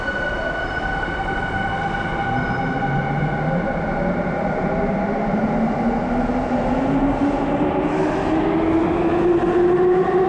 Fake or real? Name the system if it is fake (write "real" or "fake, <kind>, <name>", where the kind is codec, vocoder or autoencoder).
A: real